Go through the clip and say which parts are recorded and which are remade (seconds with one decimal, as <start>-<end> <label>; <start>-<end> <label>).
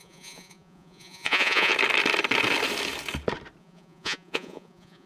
0.0-1.7 remade; 1.7-3.6 recorded; 3.6-5.1 remade